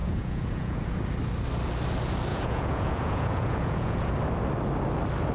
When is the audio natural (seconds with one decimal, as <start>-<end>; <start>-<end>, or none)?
0.9-2.3; 4.1-5.3